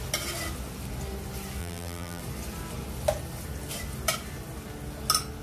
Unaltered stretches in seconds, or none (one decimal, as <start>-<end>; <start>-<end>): 0.0-1.6; 2.2-5.4